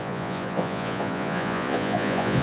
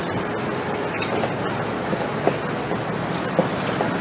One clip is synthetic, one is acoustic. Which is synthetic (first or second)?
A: first